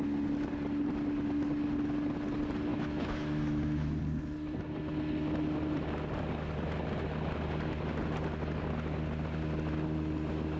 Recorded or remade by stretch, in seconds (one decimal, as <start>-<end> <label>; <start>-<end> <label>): 0.0-2.7 recorded; 2.7-4.0 remade; 4.0-10.6 recorded